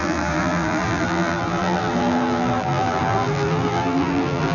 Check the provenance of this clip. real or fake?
fake